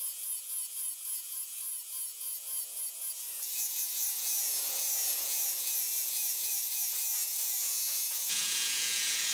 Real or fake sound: fake